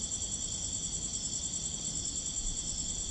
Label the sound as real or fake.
real